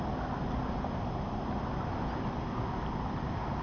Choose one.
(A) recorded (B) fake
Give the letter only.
A